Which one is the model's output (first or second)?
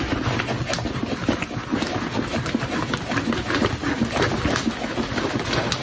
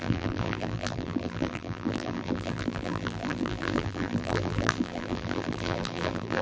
second